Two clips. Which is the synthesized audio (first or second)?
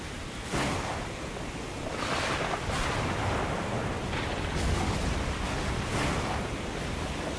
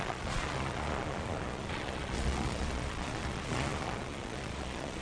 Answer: second